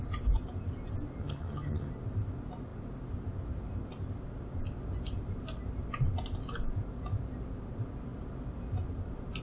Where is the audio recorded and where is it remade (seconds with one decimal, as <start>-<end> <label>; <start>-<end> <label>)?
0.0-1.2 recorded; 1.2-1.9 remade; 1.9-9.4 recorded